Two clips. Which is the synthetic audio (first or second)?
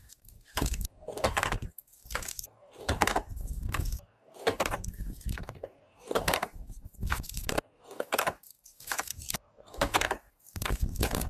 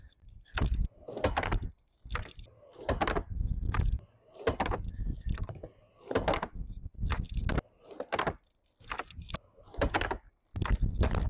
first